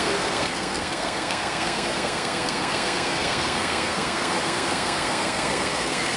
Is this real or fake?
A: fake